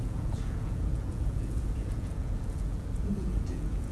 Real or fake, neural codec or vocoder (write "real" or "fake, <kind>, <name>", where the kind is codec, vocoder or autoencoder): fake, vocoder, Vocos